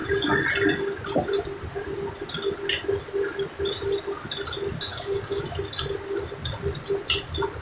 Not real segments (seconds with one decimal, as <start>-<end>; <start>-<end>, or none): 4.9-5.4